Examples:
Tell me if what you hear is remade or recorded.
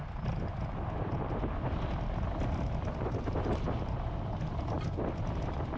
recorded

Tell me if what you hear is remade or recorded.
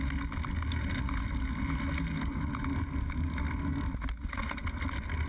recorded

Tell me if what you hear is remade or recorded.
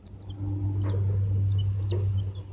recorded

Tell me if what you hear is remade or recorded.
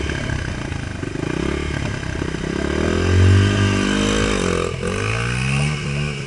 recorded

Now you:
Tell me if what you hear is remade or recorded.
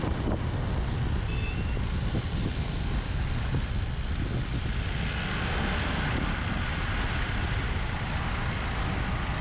recorded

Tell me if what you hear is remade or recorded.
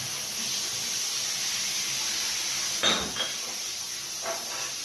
recorded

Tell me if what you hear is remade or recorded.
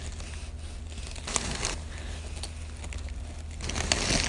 recorded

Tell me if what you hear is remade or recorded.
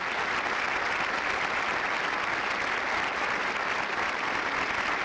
recorded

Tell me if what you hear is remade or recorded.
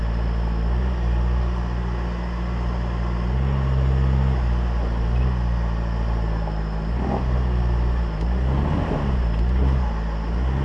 recorded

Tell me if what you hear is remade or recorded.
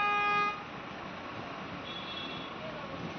recorded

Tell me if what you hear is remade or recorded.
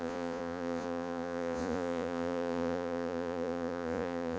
remade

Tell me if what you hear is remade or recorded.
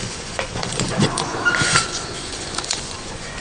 remade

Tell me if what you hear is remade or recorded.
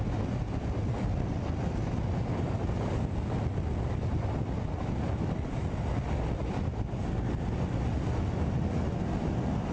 recorded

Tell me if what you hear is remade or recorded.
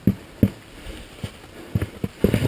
recorded